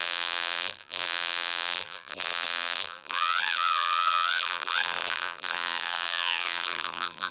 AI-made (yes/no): yes